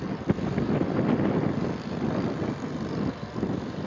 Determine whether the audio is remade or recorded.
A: recorded